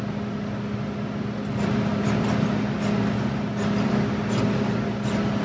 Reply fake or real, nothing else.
real